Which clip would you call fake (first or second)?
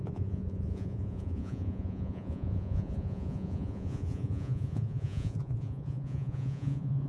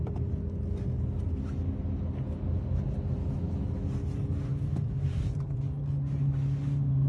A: first